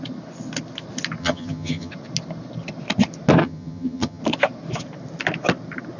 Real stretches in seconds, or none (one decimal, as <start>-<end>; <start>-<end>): 0.0-1.2; 1.9-3.4; 4.2-6.0